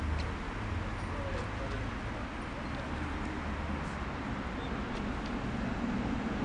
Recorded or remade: recorded